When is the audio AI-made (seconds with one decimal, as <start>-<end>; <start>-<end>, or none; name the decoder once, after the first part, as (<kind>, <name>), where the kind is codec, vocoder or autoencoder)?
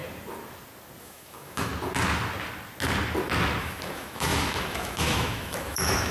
1.0-1.7 (autoencoder, DAC-VAE); 3.6-6.1